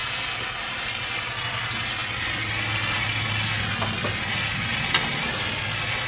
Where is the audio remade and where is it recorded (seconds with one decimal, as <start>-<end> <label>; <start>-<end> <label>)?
0.0-6.1 recorded